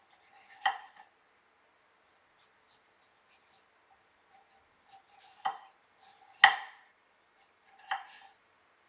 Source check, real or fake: real